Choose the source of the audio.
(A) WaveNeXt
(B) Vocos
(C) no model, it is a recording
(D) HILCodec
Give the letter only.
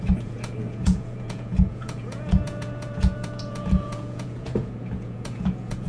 B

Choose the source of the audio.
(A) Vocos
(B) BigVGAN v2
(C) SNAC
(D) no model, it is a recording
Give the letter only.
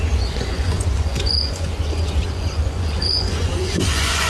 A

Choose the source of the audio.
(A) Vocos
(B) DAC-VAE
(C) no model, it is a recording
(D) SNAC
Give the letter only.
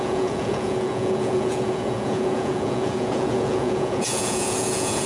A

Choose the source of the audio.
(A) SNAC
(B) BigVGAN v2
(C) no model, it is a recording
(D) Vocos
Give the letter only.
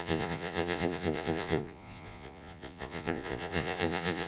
D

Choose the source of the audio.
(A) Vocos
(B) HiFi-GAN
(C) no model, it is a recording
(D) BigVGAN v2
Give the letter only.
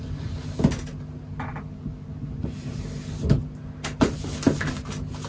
C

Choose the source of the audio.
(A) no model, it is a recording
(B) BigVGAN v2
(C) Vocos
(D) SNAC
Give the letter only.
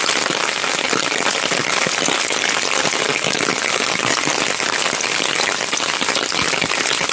A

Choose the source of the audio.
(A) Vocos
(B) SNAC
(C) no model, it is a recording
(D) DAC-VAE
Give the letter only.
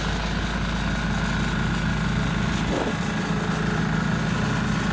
C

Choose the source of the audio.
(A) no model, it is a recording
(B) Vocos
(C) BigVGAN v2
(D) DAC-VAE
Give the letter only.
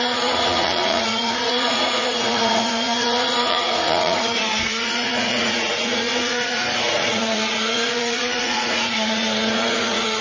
B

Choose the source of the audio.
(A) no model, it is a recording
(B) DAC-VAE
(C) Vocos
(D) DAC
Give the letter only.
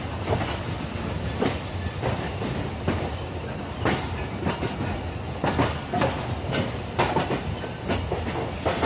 A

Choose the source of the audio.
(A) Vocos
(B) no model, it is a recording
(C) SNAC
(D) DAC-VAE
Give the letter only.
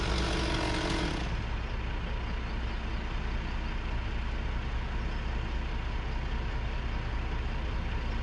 B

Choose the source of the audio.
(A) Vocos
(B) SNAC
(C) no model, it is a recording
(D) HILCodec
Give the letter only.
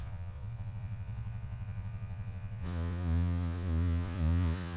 A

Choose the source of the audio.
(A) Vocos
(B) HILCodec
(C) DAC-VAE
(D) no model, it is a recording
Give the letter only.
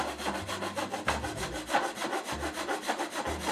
D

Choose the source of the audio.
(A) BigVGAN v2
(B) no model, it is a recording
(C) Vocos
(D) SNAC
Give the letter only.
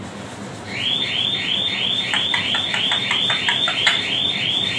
B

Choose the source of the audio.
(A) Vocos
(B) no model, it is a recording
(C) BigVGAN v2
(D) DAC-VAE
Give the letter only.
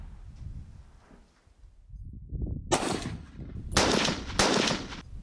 B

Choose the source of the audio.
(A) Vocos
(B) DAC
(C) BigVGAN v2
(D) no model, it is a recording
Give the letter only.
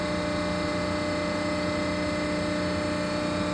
D